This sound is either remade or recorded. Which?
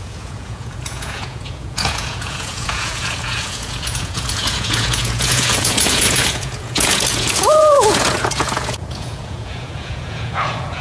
remade